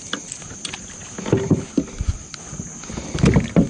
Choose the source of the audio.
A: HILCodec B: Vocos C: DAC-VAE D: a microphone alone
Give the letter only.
D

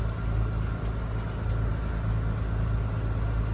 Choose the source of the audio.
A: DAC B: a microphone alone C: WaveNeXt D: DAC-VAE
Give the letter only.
B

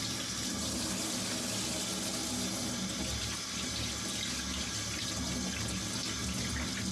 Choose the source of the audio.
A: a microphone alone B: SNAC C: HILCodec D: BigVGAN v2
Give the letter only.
A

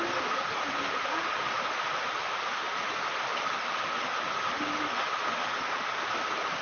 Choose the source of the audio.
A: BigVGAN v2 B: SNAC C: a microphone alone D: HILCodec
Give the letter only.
C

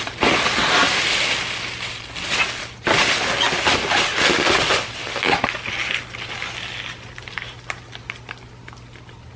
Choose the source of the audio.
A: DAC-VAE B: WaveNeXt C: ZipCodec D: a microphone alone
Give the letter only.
D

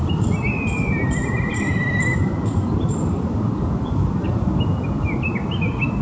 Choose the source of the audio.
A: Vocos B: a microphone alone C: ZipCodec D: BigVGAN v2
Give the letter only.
B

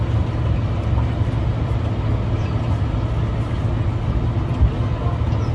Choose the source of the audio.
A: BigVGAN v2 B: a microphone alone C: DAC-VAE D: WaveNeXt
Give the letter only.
B